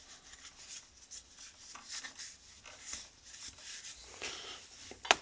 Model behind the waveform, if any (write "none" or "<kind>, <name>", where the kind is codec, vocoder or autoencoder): none